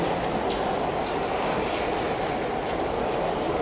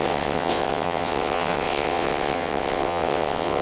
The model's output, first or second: second